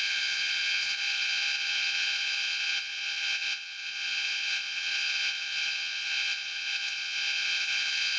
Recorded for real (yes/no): no